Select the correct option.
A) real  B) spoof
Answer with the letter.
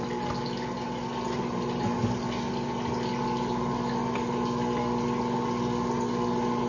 A